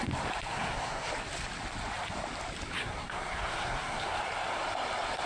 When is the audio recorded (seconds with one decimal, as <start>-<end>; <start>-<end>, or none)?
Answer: 0.0-0.5; 1.1-2.8; 4.2-5.3